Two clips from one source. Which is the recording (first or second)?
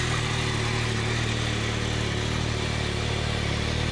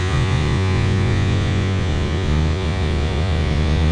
first